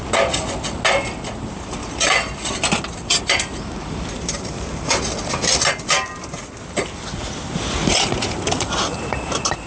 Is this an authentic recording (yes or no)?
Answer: yes